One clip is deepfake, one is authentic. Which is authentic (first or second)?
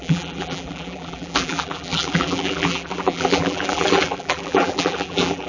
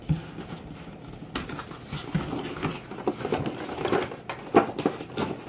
second